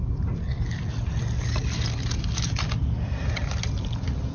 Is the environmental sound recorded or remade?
recorded